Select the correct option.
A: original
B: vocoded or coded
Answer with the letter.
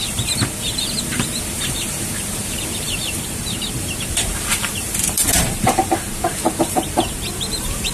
B